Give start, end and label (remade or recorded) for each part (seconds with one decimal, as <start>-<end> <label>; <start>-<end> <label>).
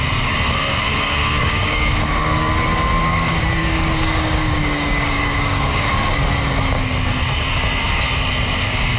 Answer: 0.0-0.7 recorded; 0.7-2.5 remade; 2.5-3.0 recorded; 3.0-5.9 remade; 5.9-9.0 recorded